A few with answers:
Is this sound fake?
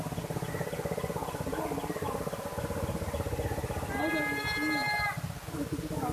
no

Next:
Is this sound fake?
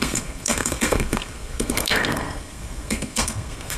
yes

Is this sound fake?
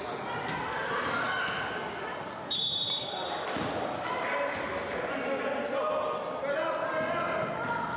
no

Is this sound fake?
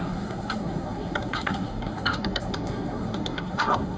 yes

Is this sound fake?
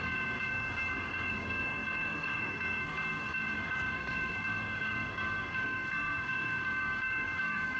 yes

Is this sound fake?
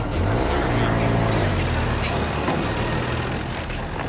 no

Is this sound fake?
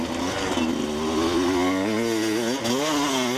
no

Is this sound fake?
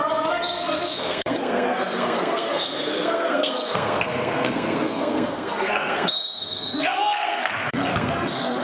yes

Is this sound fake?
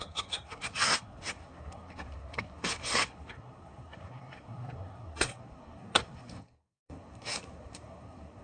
yes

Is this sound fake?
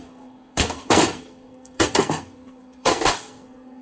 yes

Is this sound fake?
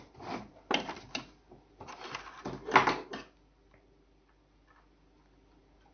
no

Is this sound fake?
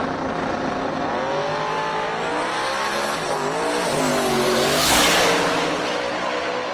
no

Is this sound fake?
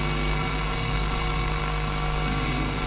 yes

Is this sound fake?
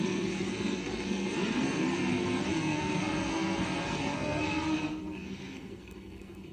yes